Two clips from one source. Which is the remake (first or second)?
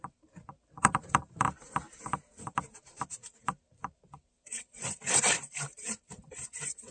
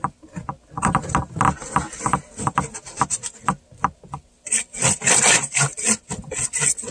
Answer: first